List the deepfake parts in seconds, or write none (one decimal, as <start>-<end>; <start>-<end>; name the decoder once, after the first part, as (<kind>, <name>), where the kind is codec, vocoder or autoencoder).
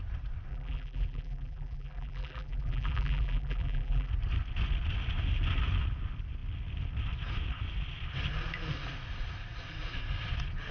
0.5-4.1 (vocoder, BigVGAN v2)